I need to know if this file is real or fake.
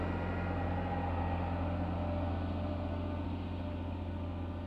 real